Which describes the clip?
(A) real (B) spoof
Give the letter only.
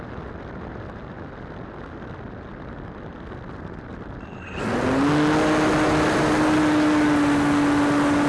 A